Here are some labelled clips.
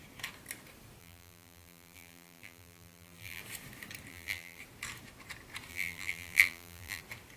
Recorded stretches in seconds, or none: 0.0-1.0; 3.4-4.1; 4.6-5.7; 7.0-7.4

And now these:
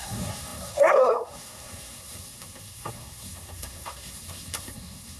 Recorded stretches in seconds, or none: none